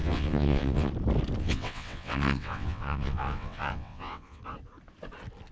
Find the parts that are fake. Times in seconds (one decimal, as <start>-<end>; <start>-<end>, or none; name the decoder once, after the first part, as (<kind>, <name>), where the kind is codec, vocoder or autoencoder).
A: 0.0-0.9 (vocoder, WaveNeXt); 1.4-4.4